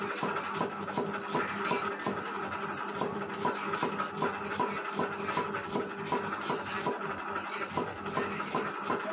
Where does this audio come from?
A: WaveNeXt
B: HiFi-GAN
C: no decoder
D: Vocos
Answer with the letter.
C